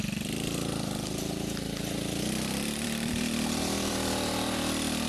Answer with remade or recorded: remade